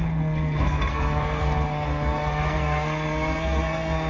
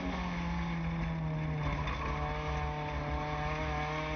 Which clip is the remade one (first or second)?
first